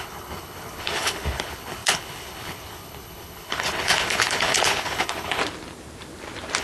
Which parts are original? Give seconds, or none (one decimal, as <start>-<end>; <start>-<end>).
5.4-6.6